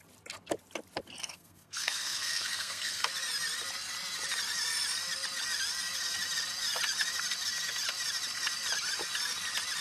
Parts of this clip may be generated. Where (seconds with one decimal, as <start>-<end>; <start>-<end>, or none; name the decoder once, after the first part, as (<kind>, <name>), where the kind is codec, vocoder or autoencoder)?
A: 1.2-3.1 (codec, SNAC)